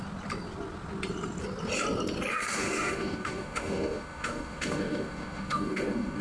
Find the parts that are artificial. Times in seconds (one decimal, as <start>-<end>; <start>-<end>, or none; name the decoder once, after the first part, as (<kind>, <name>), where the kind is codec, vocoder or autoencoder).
2.3-6.2 (autoencoder, DAC-VAE)